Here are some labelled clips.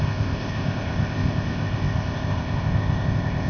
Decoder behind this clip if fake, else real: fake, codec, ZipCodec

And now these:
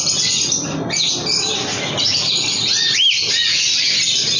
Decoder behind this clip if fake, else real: real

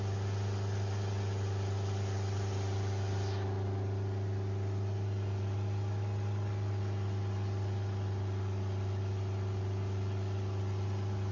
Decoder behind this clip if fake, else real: real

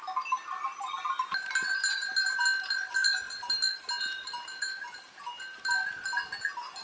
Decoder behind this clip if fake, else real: real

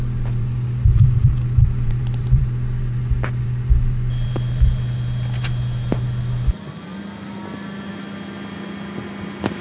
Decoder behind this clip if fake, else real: real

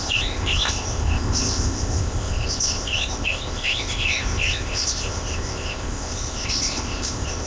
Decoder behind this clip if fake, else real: fake, codec, ZipCodec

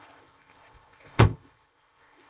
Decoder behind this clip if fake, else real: fake, codec, ZipCodec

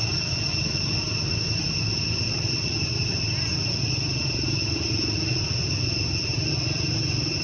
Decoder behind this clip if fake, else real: real